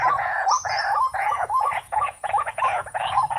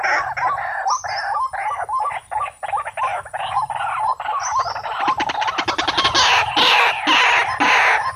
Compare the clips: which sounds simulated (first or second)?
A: first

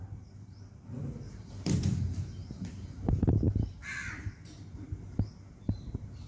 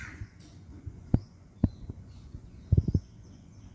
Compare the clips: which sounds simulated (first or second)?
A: second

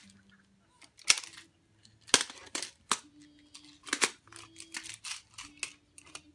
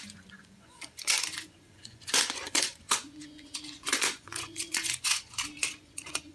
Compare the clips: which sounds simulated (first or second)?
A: second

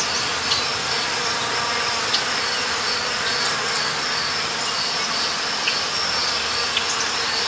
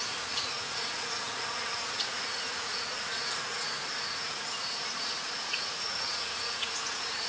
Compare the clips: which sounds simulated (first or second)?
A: second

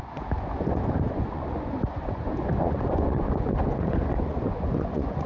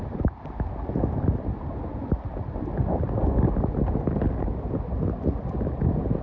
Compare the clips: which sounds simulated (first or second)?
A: first